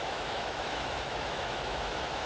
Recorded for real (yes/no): no